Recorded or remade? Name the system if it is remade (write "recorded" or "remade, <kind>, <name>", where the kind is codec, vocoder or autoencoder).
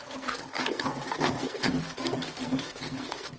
remade, codec, SNAC